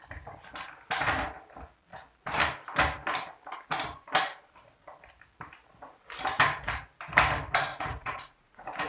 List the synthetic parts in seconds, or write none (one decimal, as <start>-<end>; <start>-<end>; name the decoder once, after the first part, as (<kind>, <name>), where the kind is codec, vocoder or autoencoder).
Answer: 7.7-8.9 (vocoder, Vocos)